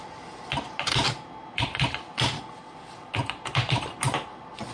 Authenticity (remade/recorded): recorded